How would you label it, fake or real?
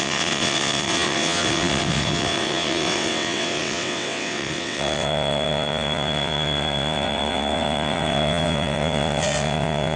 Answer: fake